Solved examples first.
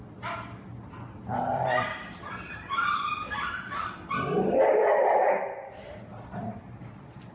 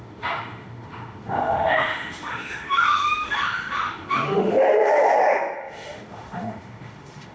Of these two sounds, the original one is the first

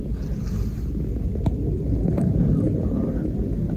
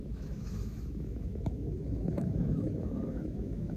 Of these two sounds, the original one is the first